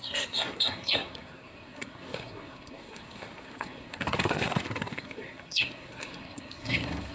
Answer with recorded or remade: remade